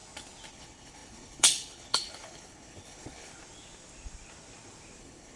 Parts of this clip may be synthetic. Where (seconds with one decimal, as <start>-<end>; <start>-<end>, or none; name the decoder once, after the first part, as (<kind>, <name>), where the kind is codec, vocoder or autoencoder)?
0.5-3.3 (codec, HILCodec); 5.0-5.4